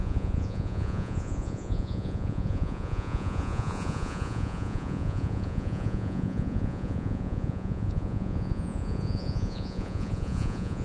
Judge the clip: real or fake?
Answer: fake